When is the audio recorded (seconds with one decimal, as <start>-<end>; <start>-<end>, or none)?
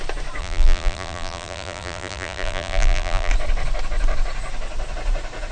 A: 0.0-0.4; 3.3-5.5